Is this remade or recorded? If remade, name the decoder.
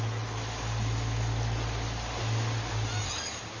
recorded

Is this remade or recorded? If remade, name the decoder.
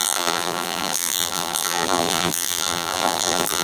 remade, vocoder, BigVGAN v2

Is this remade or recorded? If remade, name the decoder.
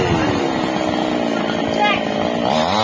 recorded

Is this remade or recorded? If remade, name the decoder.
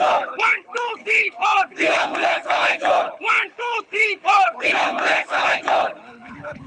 remade, codec, HILCodec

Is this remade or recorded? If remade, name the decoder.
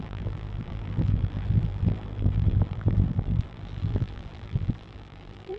remade, vocoder, BigVGAN v2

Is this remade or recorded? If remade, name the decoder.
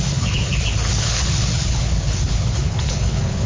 remade, codec, HILCodec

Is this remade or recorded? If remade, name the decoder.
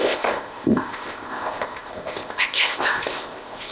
remade, codec, ZipCodec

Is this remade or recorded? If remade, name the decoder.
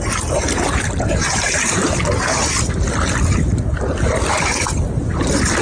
recorded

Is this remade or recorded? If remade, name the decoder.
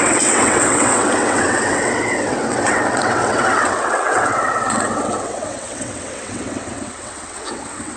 remade, vocoder, WaveNeXt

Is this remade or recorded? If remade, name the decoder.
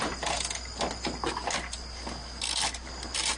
recorded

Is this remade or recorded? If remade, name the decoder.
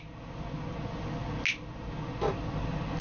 recorded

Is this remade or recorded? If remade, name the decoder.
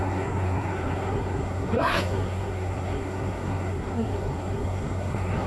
remade, codec, SNAC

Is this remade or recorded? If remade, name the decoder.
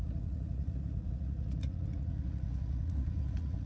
remade, vocoder, Vocos